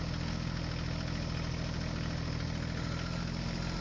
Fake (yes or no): no